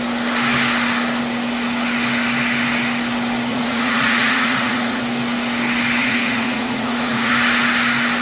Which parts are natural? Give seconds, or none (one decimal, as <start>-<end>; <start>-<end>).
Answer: 0.0-3.5; 5.0-6.0; 7.3-8.2